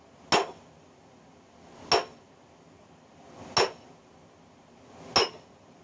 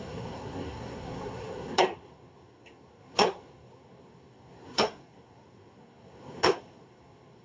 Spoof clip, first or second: second